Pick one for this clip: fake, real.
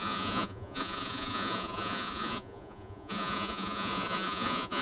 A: fake